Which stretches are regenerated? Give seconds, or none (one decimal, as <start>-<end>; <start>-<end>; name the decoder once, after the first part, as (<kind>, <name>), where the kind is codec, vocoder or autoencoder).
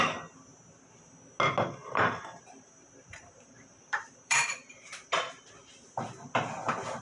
1.8-5.5 (vocoder, BigVGAN v2)